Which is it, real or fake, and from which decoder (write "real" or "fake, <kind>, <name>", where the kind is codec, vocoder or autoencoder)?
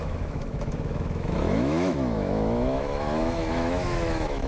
fake, autoencoder, DAC-VAE